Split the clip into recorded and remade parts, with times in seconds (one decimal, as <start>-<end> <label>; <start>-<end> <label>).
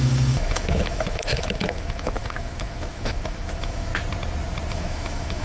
0.0-3.9 remade; 3.9-4.7 recorded; 4.7-5.4 remade